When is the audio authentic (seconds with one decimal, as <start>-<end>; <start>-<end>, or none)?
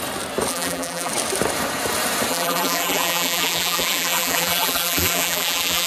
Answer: 0.0-0.5; 1.1-2.3